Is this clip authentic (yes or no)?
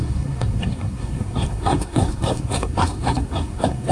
no